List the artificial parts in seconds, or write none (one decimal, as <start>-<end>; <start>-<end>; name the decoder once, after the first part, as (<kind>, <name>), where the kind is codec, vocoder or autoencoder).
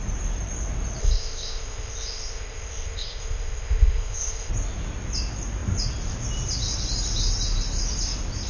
1.0-4.5 (codec, ZipCodec)